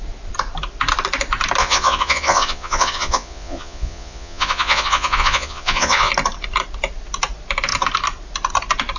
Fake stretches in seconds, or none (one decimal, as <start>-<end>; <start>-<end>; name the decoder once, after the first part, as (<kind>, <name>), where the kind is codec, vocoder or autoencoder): 1.6-6.1 (vocoder, Vocos)